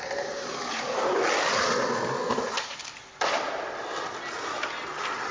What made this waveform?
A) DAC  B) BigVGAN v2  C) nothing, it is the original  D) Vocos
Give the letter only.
C